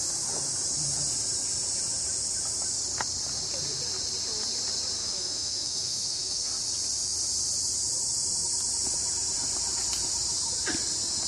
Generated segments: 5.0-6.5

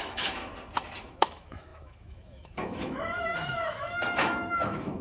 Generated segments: 0.0-0.5; 1.0-5.0

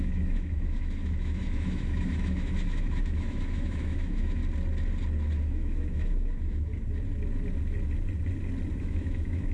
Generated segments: 0.0-4.4; 5.4-6.7; 8.8-9.5